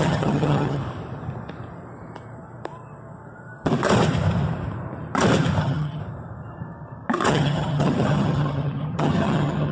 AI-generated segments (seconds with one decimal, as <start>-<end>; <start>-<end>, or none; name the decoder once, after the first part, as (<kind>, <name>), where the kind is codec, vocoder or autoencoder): 0.0-0.8 (vocoder, HiFi-GAN); 5.6-6.0; 7.3-9.7